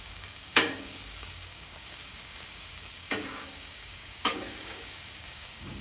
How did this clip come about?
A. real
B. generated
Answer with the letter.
B